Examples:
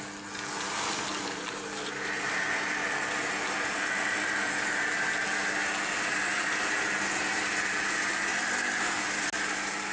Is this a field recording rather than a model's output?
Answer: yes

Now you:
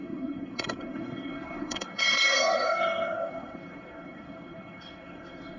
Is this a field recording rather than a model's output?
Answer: no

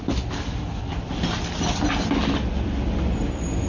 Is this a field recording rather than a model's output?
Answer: yes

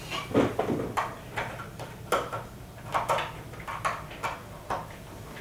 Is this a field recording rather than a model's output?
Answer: yes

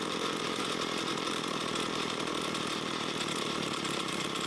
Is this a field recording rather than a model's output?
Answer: no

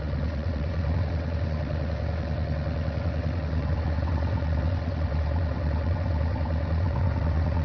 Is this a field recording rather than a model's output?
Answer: no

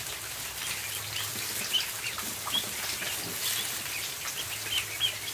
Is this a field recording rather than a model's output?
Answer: yes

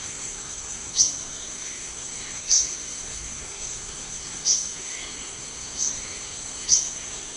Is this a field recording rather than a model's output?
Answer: no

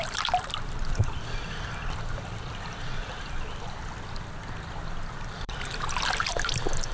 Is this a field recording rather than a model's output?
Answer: no